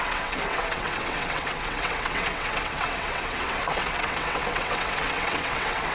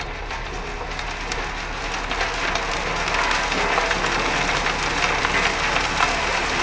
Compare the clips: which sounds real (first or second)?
second